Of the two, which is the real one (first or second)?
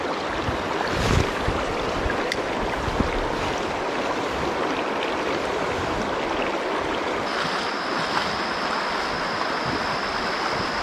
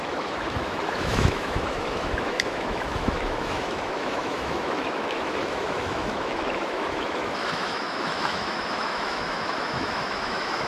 first